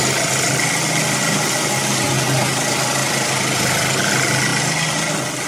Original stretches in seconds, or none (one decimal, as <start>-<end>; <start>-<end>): 0.0-1.2; 1.8-5.5